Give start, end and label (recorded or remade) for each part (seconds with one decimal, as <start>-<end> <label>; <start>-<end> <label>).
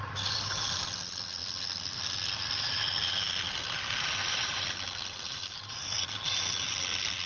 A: 0.0-7.3 recorded